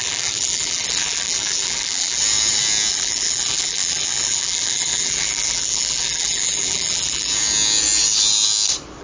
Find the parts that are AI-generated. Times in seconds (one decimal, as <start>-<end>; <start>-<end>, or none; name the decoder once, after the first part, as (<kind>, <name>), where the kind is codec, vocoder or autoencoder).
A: 0.0-2.2 (vocoder, BigVGAN v2); 2.9-7.3